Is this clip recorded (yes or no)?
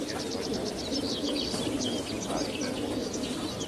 yes